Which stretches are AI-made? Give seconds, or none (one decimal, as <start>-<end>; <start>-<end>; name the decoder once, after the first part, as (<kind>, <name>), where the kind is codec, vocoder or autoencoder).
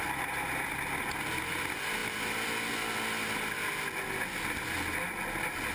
none